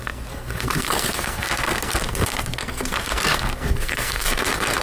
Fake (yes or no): yes